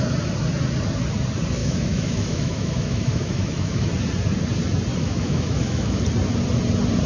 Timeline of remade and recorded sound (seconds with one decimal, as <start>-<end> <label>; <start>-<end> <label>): 0.0-1.6 recorded; 1.6-3.9 remade; 3.9-4.9 recorded; 4.9-6.0 remade; 6.0-7.1 recorded